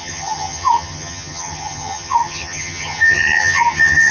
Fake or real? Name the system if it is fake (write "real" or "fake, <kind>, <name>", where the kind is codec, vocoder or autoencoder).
fake, vocoder, HiFi-GAN